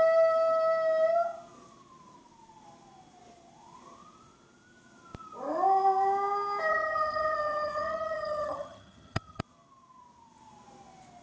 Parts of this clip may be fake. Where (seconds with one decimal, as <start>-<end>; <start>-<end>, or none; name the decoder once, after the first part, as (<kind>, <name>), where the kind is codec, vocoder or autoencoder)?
6.7-9.4 (vocoder, HiFi-GAN)